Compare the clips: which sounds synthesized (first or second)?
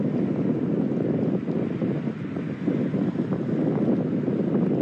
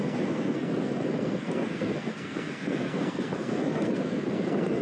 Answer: second